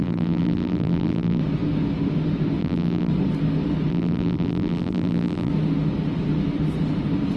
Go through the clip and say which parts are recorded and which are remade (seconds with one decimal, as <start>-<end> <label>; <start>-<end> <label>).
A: 0.0-1.4 remade; 1.4-2.6 recorded; 2.6-3.1 remade; 3.1-3.9 recorded; 3.9-5.5 remade; 5.5-7.4 recorded